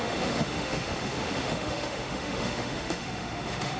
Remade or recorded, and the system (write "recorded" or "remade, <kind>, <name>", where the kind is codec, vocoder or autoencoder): remade, autoencoder, DAC-VAE